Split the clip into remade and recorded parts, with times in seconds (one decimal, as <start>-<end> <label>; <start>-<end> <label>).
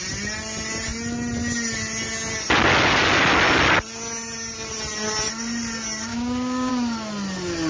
0.0-6.1 recorded; 6.1-6.7 remade; 6.7-7.7 recorded